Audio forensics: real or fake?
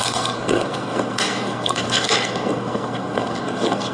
fake